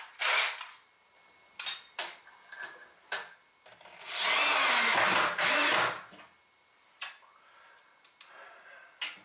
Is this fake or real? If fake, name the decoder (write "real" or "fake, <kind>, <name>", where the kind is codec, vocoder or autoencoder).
real